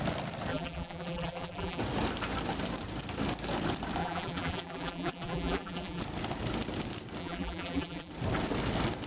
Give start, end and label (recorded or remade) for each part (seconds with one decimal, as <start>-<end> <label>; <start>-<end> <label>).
0.0-0.5 recorded; 0.5-1.8 remade; 1.8-4.0 recorded; 4.0-6.0 remade; 6.0-7.2 recorded; 7.2-8.1 remade; 8.1-9.1 recorded